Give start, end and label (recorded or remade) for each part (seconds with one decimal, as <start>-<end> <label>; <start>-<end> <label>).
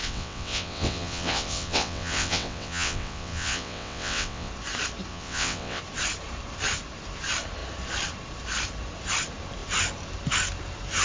0.0-4.5 remade; 4.5-5.1 recorded; 5.1-5.8 remade; 5.8-11.0 recorded